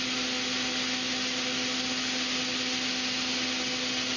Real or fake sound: real